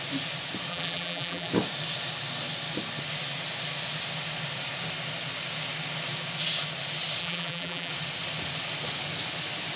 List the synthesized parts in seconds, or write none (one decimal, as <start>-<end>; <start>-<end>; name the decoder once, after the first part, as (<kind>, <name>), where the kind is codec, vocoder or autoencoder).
0.7-1.5 (vocoder, BigVGAN v2); 7.2-7.9